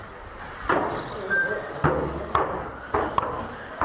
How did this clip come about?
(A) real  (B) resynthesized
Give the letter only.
A